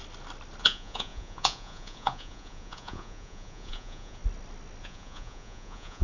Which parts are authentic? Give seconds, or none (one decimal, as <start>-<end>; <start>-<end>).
0.0-0.6; 4.2-4.8